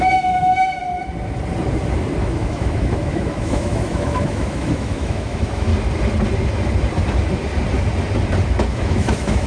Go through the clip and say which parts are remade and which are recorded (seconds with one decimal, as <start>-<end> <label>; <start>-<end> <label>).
0.0-0.8 remade; 0.8-2.2 recorded; 2.2-5.7 remade; 5.7-8.7 recorded; 8.7-9.5 remade